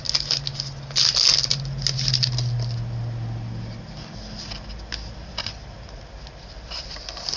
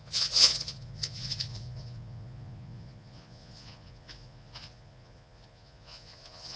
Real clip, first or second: first